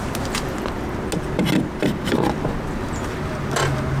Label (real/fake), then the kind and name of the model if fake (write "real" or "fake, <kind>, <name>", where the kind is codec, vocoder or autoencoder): real